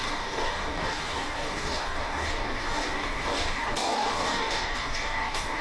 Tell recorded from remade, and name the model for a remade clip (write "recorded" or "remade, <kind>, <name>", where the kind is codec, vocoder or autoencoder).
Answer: remade, codec, DAC